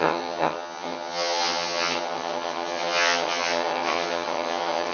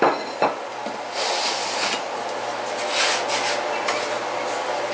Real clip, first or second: second